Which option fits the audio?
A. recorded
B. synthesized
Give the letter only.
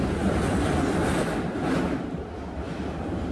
A